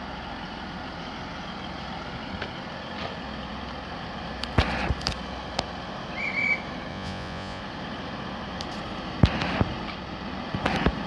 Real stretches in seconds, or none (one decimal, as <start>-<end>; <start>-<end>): 0.0-6.9; 7.6-11.1

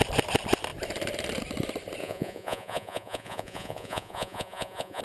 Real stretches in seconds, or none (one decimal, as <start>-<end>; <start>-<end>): 0.0-2.0

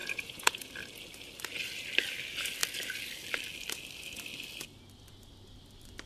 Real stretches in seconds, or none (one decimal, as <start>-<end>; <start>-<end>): 0.7-6.1

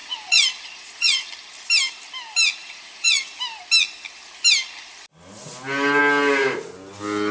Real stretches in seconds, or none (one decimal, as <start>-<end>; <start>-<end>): 1.3-2.6; 3.2-7.3

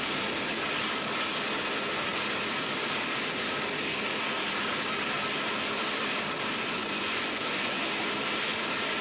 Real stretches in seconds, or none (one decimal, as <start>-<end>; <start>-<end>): 0.0-6.8; 7.8-9.0